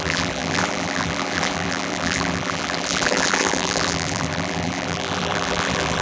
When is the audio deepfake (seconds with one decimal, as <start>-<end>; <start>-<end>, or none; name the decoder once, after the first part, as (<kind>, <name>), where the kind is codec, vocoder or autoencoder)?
0.0-6.0 (vocoder, BigVGAN v2)